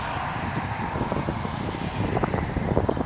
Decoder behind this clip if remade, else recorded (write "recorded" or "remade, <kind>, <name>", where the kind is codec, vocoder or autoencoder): recorded